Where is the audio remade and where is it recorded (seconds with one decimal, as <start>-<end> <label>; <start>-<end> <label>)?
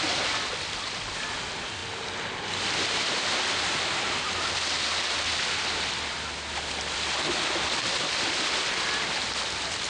0.0-9.9 recorded